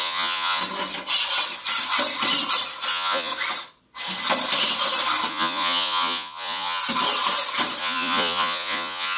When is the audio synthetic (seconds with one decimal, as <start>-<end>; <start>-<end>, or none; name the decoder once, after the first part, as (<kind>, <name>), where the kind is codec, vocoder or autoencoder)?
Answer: 0.0-0.6 (vocoder, Vocos); 2.9-3.3; 5.3-6.8; 7.8-9.2